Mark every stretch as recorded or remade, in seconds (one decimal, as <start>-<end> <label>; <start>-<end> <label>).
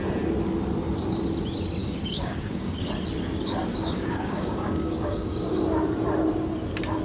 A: 0.0-1.8 recorded; 1.8-2.9 remade; 2.9-3.7 recorded; 3.7-5.6 remade; 5.6-7.0 recorded